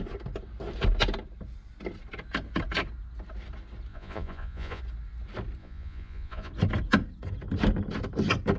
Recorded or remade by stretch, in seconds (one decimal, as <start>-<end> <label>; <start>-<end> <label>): 0.0-3.9 recorded; 3.9-4.8 remade; 4.8-5.6 recorded; 5.6-6.5 remade; 6.5-8.6 recorded